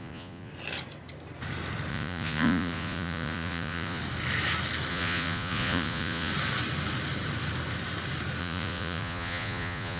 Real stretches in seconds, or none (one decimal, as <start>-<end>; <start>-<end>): 0.5-1.9; 4.0-4.9; 6.3-8.4